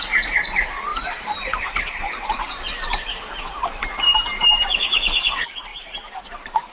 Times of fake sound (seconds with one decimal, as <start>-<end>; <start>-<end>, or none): 0.9-3.4; 5.7-6.7

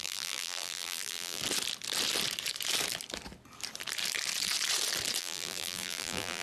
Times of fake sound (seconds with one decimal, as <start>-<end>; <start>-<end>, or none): 0.0-1.4; 5.2-6.4

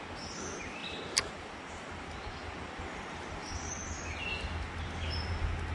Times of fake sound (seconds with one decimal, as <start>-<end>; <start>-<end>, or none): 0.8-2.8

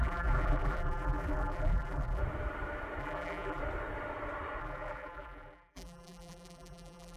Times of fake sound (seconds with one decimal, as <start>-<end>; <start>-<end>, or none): 0.0-2.2; 3.0-3.6; 4.6-7.2